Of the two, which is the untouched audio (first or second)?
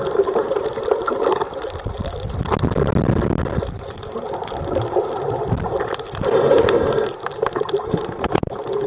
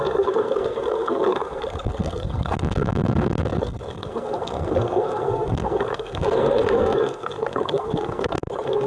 first